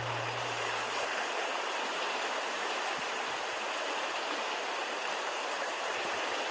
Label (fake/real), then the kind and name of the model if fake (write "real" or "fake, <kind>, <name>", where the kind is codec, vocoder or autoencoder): fake, vocoder, BigVGAN v2